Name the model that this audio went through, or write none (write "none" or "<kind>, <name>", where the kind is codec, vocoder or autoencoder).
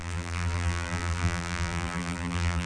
vocoder, BigVGAN v2